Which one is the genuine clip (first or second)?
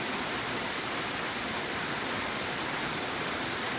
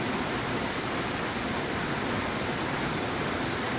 second